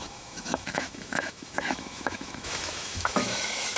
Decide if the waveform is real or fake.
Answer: fake